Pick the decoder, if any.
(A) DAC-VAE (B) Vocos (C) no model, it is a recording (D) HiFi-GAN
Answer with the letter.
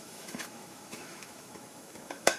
A